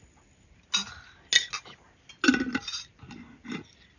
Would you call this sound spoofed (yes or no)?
no